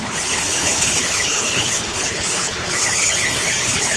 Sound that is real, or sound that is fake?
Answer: fake